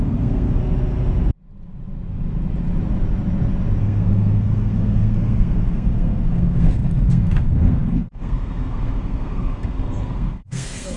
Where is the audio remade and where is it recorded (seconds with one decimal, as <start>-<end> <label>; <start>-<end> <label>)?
0.0-0.6 remade; 0.6-3.8 recorded; 3.8-11.0 remade